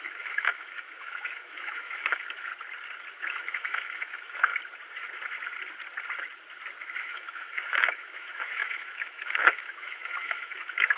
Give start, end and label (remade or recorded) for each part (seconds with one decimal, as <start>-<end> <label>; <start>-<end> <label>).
0.0-2.5 remade; 2.5-3.1 recorded; 3.1-4.5 remade; 4.5-7.0 recorded; 7.0-11.0 remade